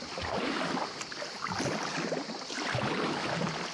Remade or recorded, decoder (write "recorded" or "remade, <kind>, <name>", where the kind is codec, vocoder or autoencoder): recorded